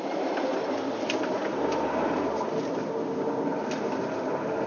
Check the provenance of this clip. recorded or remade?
recorded